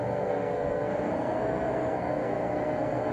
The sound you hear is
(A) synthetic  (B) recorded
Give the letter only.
A